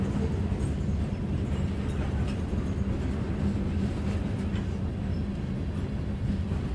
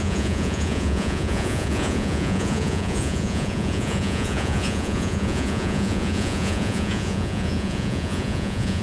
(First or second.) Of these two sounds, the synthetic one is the second